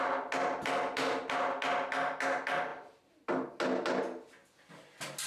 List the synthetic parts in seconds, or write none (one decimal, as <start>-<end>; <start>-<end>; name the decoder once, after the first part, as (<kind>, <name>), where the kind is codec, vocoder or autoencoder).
none